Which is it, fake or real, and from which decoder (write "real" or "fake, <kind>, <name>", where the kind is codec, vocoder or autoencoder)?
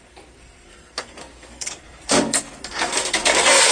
fake, codec, SNAC